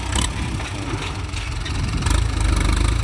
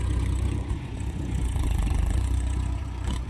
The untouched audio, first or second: first